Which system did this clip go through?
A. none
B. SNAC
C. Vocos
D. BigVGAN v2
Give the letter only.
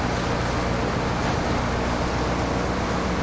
A